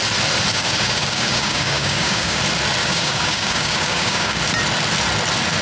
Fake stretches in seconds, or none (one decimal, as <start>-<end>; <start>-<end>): 0.5-2.4; 2.8-4.4